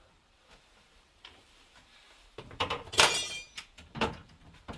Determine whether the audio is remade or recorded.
remade